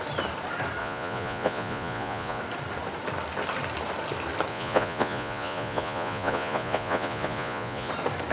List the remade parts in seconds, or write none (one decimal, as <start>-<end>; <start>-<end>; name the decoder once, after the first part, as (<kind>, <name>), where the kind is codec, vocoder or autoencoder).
0.8-2.4 (vocoder, Vocos); 4.5-7.9

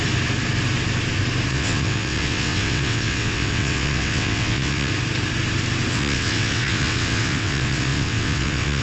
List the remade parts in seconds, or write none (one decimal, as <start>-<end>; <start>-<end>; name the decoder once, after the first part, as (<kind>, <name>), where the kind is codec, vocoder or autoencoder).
1.5-4.9 (vocoder, WaveNeXt); 5.9-8.8

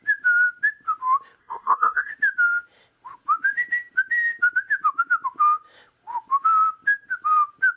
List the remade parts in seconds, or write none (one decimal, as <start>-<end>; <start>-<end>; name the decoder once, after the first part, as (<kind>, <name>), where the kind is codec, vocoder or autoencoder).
1.4-2.1 (codec, SNAC)

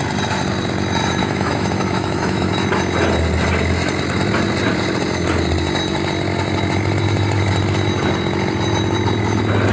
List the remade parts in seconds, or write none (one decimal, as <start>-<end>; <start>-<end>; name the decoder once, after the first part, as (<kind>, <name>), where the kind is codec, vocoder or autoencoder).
1.2-2.5 (autoencoder, DAC-VAE)

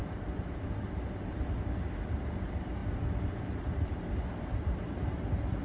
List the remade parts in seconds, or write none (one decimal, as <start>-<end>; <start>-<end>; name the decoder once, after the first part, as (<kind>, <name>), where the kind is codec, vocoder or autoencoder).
2.2-2.8 (vocoder, BigVGAN v2); 3.4-5.6

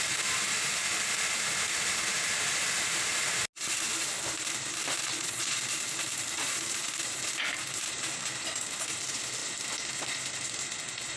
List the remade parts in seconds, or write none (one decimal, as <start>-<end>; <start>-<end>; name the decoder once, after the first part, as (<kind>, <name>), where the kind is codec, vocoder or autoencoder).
5.1-5.6 (vocoder, Vocos)